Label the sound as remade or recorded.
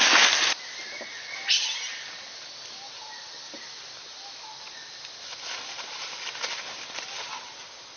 recorded